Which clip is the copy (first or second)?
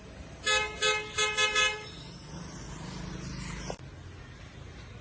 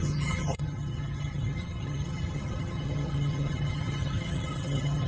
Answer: second